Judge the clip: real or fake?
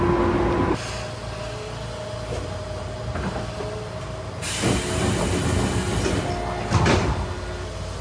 real